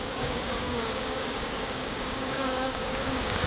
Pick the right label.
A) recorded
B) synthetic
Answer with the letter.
B